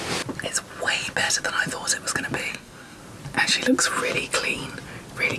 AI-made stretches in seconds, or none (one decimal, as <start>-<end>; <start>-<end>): 2.5-3.0